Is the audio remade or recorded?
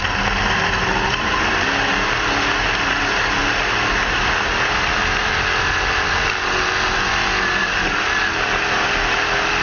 recorded